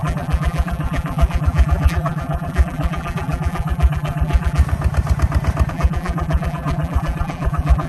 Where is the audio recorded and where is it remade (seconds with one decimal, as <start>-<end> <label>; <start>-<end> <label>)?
0.0-4.6 remade; 4.6-5.7 recorded; 5.7-7.9 remade